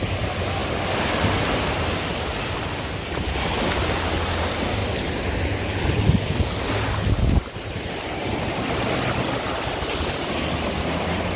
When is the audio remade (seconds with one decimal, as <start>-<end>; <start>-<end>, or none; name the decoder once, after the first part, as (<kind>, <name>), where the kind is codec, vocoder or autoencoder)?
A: none